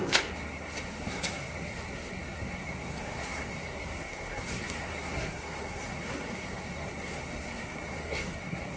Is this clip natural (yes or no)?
no